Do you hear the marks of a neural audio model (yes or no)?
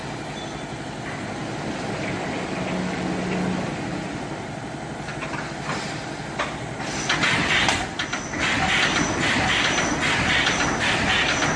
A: no